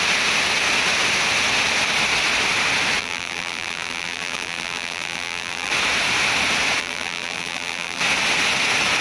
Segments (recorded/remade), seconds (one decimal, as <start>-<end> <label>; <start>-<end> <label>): 0.0-3.0 recorded; 3.0-5.7 remade; 5.7-6.8 recorded; 6.8-8.0 remade; 8.0-9.0 recorded